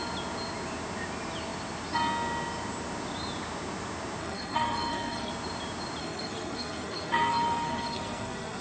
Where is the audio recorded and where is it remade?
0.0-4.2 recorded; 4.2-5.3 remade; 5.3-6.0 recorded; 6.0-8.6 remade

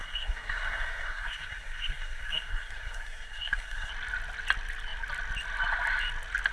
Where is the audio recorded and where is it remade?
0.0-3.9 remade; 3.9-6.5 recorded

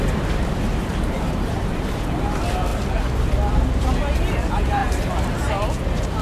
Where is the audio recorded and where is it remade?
0.0-6.2 recorded

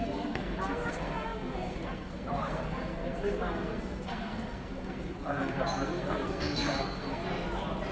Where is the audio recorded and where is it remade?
0.0-7.2 remade; 7.2-7.9 recorded

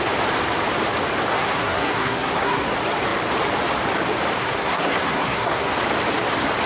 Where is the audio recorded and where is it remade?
0.0-1.3 recorded; 1.3-2.7 remade; 2.7-4.4 recorded; 4.4-5.7 remade; 5.7-6.7 recorded